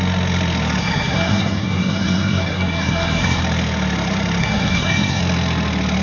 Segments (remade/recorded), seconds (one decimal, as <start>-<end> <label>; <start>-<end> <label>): 0.0-0.8 recorded; 0.8-3.4 remade; 3.4-4.4 recorded; 4.4-5.2 remade; 5.2-6.0 recorded